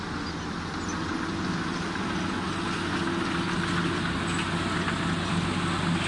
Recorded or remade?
recorded